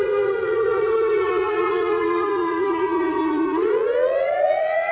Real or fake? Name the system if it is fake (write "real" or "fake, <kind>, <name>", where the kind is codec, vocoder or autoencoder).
fake, vocoder, Vocos